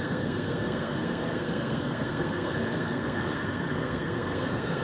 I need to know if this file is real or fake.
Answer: fake